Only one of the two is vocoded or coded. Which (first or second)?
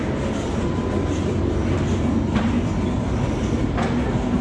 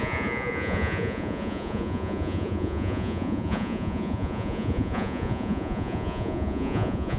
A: second